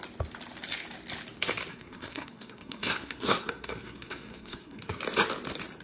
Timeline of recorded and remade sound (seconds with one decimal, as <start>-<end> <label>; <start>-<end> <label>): 0.0-1.7 recorded; 1.7-5.0 remade; 5.0-5.8 recorded